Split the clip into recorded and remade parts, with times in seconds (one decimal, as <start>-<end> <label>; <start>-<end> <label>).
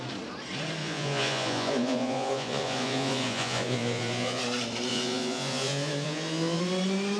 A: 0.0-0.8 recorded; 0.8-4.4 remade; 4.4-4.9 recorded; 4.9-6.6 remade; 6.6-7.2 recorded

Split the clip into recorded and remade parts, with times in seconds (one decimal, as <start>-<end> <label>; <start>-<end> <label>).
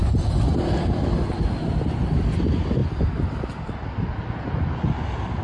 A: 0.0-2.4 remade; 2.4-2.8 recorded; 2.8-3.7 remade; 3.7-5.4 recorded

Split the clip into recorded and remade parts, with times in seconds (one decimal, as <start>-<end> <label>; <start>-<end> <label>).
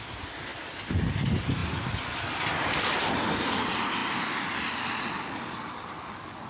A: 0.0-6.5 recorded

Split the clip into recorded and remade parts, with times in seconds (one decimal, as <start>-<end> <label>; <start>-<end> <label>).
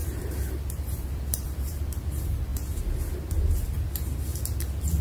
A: 0.0-2.0 remade; 2.0-5.0 recorded